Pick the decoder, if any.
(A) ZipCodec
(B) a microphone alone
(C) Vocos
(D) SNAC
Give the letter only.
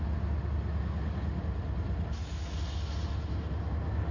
B